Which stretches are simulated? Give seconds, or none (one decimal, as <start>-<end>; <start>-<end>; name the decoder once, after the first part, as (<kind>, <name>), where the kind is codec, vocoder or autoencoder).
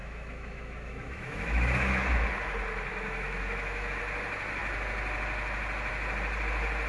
0.0-2.3 (autoencoder, DAC-VAE); 2.9-4.0